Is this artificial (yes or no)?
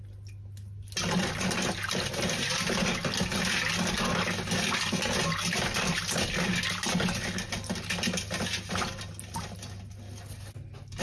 no